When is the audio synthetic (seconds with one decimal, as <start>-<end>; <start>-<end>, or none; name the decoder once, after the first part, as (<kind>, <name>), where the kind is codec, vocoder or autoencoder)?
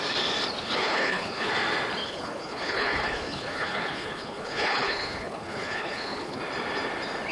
0.6-1.5 (codec, HILCodec); 2.0-6.4